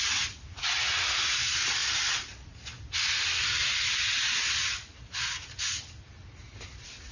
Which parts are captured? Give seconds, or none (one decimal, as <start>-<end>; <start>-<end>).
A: 0.0-7.1